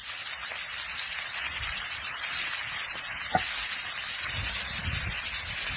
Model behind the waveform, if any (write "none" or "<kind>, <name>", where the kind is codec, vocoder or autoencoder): none